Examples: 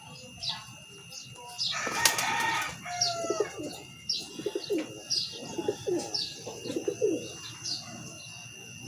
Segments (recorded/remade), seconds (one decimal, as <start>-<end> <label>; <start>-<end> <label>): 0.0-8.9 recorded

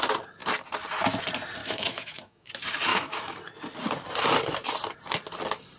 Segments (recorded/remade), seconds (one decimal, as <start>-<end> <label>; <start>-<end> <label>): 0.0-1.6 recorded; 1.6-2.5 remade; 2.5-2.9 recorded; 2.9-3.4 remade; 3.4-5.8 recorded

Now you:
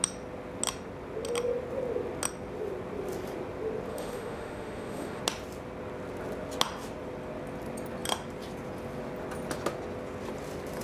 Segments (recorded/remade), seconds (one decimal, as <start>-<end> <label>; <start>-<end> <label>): 0.0-3.9 recorded; 3.9-5.2 remade; 5.2-10.8 recorded

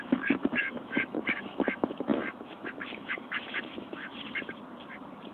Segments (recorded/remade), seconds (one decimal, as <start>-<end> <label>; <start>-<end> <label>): 0.0-4.1 remade; 4.1-5.3 recorded

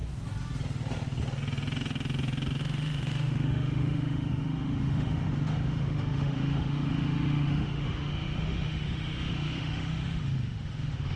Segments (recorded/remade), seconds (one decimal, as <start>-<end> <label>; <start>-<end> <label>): 0.0-2.6 recorded; 2.6-11.2 remade

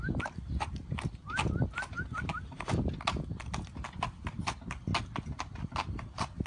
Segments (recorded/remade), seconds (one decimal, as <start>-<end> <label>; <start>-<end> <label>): 0.0-6.5 recorded